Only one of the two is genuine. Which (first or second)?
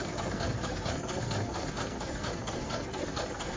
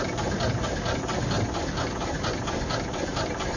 second